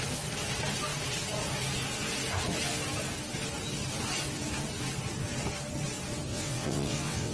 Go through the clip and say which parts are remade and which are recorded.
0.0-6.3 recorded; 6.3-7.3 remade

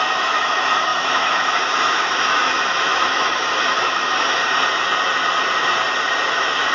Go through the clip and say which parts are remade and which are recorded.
0.0-4.4 remade; 4.4-6.3 recorded; 6.3-6.7 remade

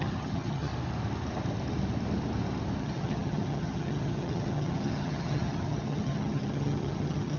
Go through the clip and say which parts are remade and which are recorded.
0.0-0.7 remade; 0.7-2.8 recorded; 2.8-7.4 remade

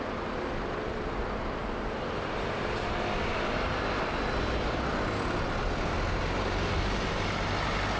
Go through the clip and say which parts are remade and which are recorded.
0.0-8.0 recorded

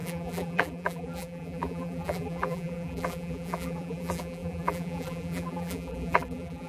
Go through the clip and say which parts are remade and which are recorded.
0.0-6.7 remade

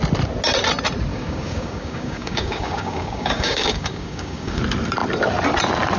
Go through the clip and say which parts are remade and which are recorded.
0.0-1.1 recorded; 1.1-4.6 remade; 4.6-6.0 recorded

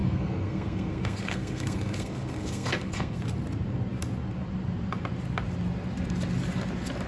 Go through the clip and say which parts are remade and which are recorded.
0.0-3.2 remade; 3.2-7.1 recorded